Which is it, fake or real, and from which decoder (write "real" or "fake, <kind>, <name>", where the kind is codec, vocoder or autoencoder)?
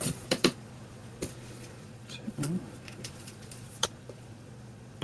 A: fake, vocoder, Vocos